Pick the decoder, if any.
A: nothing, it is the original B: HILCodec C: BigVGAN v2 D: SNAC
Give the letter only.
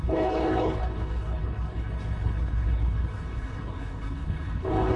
B